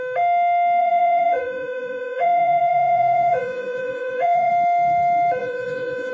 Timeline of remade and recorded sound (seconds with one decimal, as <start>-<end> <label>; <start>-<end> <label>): 0.0-0.8 recorded; 0.8-4.5 remade; 4.5-5.4 recorded; 5.4-6.1 remade